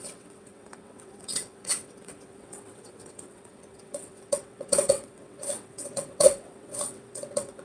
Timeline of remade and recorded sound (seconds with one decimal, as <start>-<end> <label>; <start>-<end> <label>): 0.0-7.6 remade